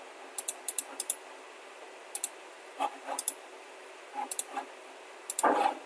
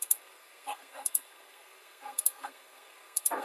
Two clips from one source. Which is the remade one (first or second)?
second